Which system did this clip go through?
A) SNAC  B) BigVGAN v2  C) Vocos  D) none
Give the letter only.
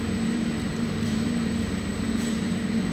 B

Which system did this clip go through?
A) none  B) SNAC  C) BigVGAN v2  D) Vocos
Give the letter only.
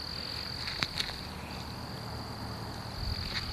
A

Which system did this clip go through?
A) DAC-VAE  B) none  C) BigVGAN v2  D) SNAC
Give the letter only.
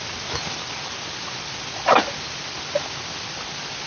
B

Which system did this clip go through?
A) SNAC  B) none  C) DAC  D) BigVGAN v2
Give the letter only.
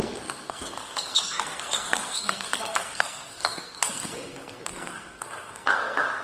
A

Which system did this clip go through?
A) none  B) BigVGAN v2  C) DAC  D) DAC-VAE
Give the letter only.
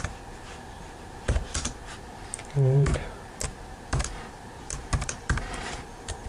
B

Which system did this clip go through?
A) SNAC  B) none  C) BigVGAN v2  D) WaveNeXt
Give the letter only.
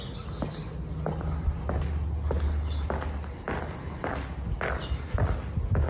B